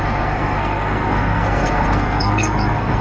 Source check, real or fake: fake